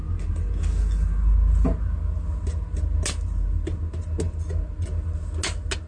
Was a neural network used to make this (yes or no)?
no